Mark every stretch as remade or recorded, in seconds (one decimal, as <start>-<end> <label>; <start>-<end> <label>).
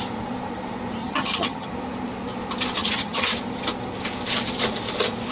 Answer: 0.0-1.0 recorded; 1.0-1.7 remade; 1.7-2.8 recorded; 2.8-3.3 remade; 3.3-5.3 recorded